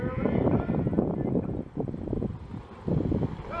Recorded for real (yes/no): yes